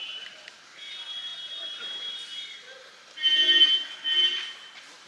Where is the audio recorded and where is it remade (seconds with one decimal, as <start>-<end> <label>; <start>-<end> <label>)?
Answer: 0.0-5.1 recorded